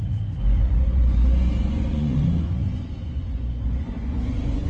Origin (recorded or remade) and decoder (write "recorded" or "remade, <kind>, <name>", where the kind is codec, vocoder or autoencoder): remade, vocoder, Vocos